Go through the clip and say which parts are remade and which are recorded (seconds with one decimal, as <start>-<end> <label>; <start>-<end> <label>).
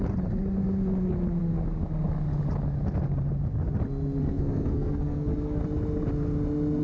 0.0-4.2 recorded; 4.2-5.6 remade; 5.6-6.8 recorded